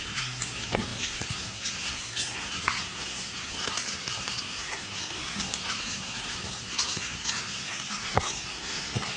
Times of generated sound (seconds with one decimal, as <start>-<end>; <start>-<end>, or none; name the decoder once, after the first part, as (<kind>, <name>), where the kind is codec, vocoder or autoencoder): 0.0-9.2 (codec, SNAC)

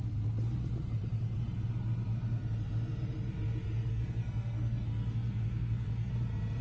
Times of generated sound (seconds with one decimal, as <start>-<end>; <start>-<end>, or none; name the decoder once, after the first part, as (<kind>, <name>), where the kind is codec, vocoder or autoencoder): 3.9-6.1 (codec, SNAC)

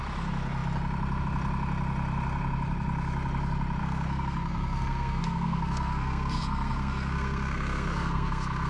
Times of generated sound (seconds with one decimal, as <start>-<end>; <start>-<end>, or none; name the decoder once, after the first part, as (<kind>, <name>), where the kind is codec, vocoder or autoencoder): 3.8-8.7 (codec, SNAC)

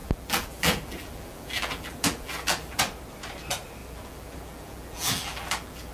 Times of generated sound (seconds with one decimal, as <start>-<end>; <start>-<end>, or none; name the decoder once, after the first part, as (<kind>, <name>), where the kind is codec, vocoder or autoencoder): 0.0-2.8 (vocoder, BigVGAN v2); 3.8-5.9

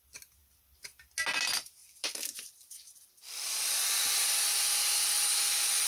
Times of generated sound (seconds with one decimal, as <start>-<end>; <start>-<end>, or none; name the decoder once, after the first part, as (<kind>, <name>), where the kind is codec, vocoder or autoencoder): 1.8-3.1 (vocoder, BigVGAN v2)

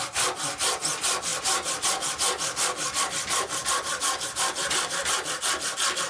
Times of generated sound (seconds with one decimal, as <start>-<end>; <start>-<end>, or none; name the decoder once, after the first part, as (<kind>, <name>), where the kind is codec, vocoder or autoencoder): none

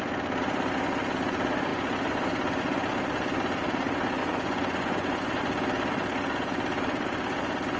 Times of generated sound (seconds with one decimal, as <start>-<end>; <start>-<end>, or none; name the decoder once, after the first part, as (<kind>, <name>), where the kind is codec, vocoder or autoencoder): 4.2-5.4 (vocoder, Vocos)